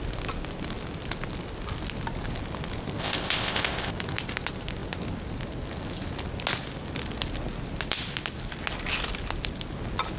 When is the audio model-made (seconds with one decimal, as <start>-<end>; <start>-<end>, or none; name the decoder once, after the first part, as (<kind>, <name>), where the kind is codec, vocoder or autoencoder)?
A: 3.0-3.9 (codec, ZipCodec)